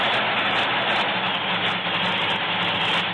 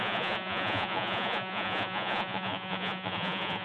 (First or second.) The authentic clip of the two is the first